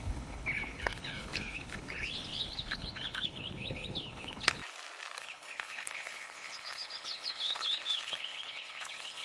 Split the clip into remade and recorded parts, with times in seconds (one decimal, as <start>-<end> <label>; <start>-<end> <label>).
0.0-4.6 remade; 4.6-5.2 recorded; 5.2-9.2 remade